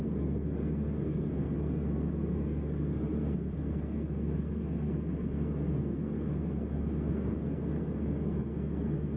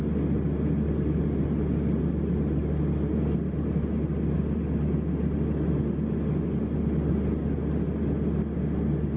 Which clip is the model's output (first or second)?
first